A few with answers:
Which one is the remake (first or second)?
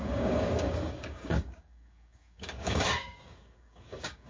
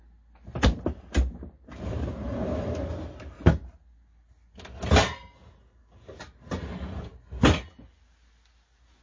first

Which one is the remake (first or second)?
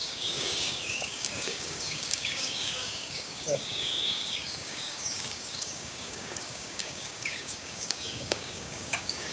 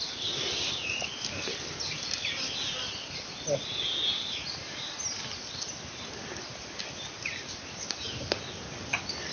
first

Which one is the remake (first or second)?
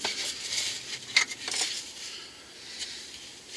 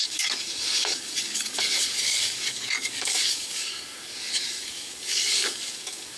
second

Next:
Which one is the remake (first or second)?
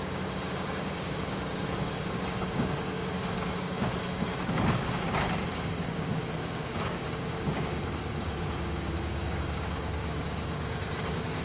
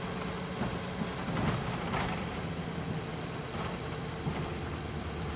first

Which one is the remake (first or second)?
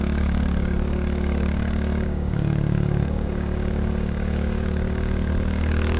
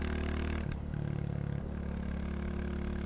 first